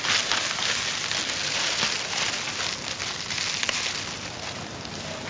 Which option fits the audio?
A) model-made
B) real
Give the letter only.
B